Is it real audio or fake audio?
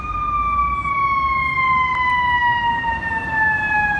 real